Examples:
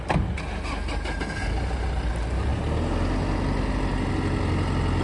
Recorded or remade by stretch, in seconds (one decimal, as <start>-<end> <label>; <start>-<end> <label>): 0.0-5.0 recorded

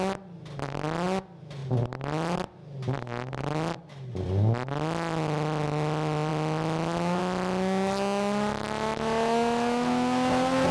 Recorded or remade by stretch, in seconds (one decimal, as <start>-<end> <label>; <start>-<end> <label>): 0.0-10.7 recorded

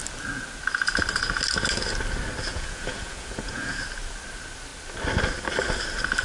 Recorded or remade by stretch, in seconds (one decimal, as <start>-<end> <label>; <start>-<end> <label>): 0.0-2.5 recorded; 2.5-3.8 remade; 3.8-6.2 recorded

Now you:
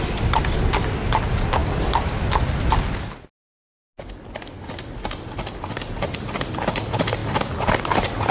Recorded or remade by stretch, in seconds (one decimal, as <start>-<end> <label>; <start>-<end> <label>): 0.0-8.3 recorded

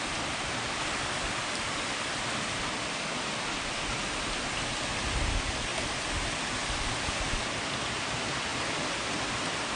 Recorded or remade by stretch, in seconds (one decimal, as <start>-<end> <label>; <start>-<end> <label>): 0.0-1.4 recorded; 1.4-2.8 remade; 2.8-8.5 recorded; 8.5-9.3 remade; 9.3-9.8 recorded